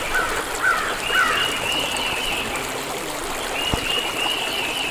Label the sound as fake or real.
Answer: real